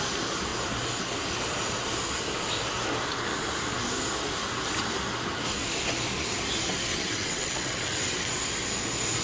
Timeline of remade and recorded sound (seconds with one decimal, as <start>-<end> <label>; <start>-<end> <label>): 0.0-6.9 recorded; 6.9-8.4 remade; 8.4-9.2 recorded